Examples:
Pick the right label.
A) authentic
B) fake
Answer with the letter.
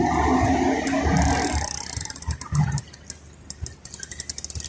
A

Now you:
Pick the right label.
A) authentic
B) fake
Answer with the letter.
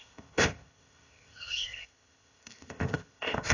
B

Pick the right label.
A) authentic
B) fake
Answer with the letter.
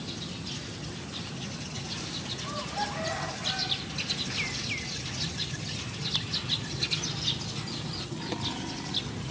A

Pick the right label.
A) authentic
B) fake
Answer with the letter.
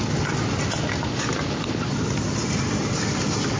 A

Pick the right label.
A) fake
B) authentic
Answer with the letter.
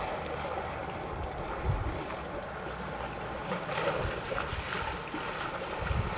B